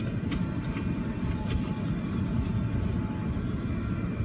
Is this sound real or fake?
real